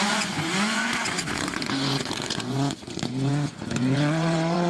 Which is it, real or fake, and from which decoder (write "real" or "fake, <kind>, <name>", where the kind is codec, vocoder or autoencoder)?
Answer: fake, vocoder, Vocos